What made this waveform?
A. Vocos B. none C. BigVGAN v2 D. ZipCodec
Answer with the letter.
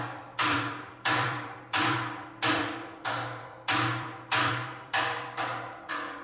C